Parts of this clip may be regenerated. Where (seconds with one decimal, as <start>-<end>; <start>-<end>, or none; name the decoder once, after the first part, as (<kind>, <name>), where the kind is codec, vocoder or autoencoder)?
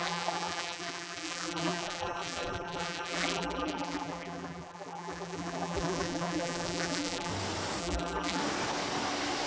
0.0-7.3 (vocoder, BigVGAN v2); 7.8-8.4